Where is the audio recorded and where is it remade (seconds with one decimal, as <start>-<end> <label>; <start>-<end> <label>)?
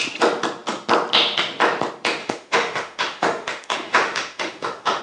0.0-2.2 recorded; 2.2-5.0 remade